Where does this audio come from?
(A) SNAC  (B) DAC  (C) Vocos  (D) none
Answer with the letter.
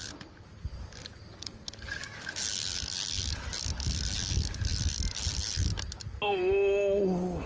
D